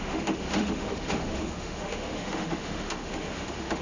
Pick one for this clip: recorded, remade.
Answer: remade